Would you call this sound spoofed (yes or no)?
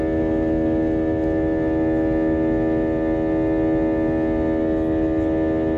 no